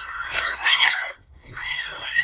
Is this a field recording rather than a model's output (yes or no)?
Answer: no